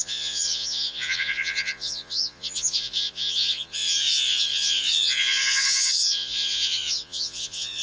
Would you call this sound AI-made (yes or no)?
yes